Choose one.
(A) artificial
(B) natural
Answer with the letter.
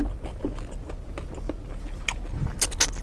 B